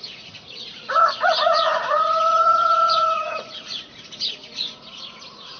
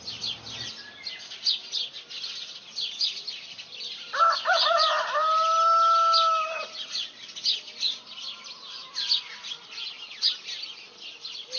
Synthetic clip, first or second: first